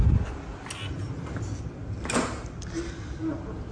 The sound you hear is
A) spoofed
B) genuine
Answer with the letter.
B